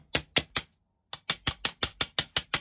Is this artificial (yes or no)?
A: no